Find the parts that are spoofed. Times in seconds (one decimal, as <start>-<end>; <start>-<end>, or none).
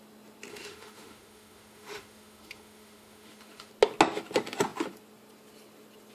0.5-3.7